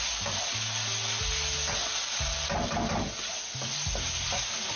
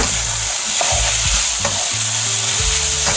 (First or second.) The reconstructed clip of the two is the second